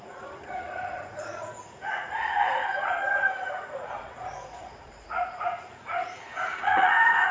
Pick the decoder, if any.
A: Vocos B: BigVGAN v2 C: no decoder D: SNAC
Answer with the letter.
A